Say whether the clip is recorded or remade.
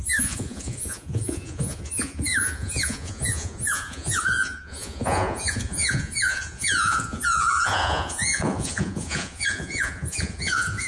remade